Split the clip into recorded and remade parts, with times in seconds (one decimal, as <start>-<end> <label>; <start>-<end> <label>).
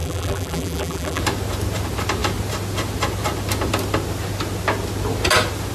0.0-1.2 remade; 1.2-5.7 recorded